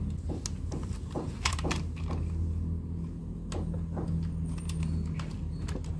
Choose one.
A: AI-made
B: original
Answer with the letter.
B